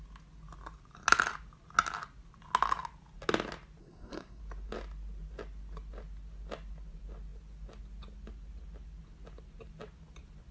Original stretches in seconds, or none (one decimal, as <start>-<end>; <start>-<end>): 0.0-3.8; 4.4-10.5